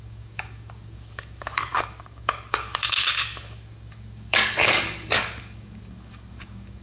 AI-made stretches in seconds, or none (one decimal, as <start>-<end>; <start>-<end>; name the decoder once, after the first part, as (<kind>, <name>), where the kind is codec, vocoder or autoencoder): 0.0-6.8 (codec, DAC)